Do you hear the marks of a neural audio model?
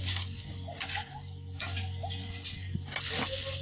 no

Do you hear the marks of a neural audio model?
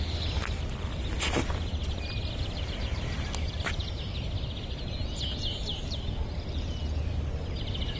no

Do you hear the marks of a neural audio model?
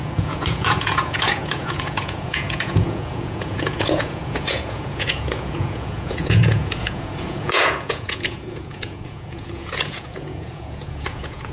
yes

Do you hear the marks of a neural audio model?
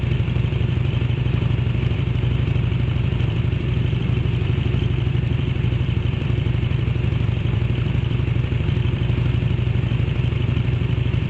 yes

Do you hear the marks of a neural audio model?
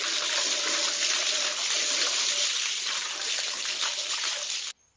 no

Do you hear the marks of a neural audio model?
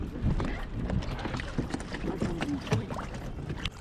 no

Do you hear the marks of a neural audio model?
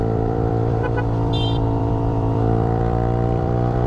yes